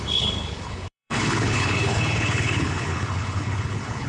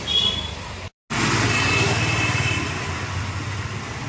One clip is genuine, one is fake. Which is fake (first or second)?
first